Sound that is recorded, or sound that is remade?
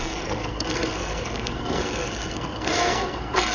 remade